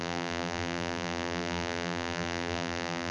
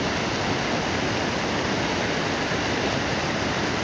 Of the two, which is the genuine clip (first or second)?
second